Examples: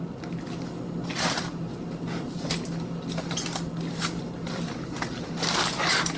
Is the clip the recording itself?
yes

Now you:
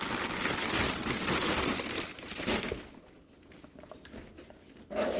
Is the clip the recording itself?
yes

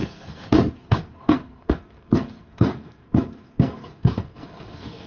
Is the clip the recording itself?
no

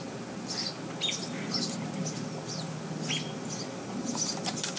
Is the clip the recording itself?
yes